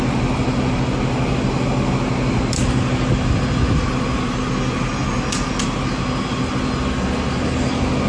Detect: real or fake real